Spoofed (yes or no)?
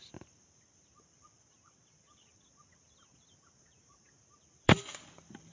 yes